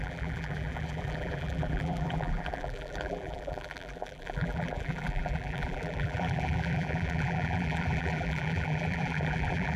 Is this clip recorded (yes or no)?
no